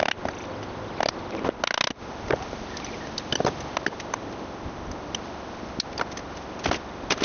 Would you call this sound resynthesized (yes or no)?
no